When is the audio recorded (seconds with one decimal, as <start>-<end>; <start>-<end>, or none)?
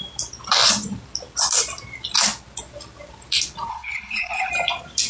0.0-3.7; 4.5-5.1